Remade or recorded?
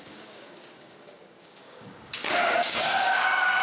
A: remade